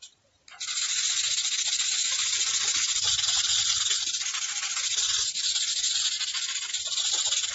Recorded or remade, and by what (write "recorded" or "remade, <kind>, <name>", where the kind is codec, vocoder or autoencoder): recorded